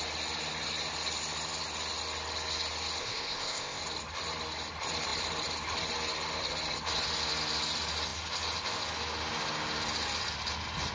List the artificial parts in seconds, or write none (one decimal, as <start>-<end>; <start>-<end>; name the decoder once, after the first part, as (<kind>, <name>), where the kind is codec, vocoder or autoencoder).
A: 3.0-3.8 (codec, ZipCodec)

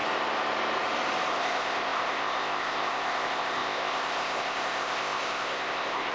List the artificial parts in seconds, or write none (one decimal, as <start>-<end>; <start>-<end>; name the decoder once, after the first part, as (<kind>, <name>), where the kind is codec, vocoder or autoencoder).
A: 1.3-6.1 (codec, ZipCodec)